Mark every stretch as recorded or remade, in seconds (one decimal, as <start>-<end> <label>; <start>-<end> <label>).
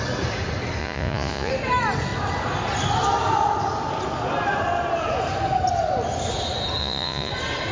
0.0-0.8 recorded; 0.8-1.5 remade; 1.5-6.8 recorded; 6.8-7.3 remade; 7.3-7.7 recorded